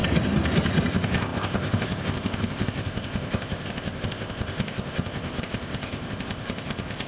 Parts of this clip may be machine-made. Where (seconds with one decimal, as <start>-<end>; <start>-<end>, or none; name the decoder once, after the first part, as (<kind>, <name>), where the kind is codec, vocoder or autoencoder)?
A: 0.9-7.1 (codec, ZipCodec)